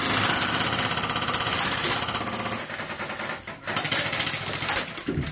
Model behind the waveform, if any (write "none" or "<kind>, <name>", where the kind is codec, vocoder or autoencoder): none